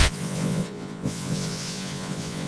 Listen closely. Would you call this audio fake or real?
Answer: fake